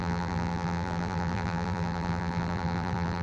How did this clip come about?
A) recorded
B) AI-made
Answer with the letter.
B